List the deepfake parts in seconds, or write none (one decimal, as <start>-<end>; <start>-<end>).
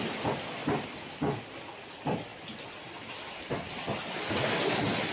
none